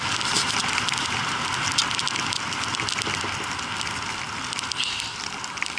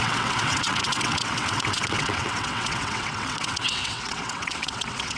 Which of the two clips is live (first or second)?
first